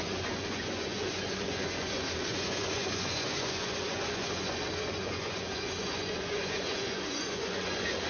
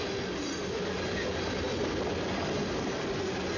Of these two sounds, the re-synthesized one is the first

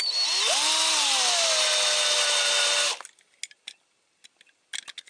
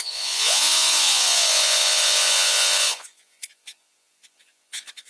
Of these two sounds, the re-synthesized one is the second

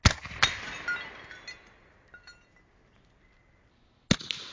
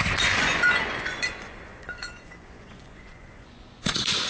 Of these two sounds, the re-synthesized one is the second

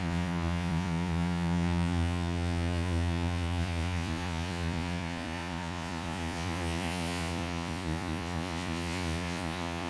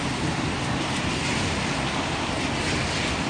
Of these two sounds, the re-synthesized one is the first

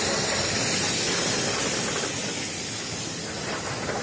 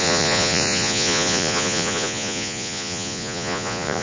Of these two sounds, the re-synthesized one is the second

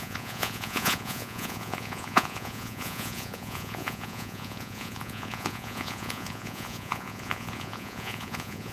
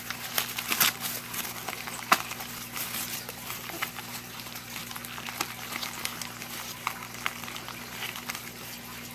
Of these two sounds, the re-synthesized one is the first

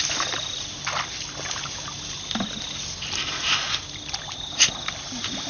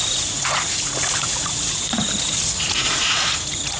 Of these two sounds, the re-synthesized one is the second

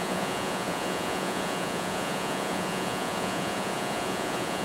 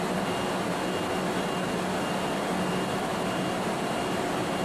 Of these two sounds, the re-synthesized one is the first